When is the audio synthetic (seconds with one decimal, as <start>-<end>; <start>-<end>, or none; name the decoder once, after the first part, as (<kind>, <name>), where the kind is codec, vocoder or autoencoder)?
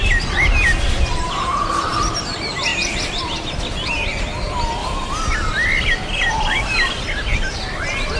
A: 2.7-3.2 (vocoder, BigVGAN v2); 4.8-7.0